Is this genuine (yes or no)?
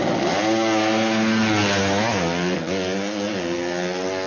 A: yes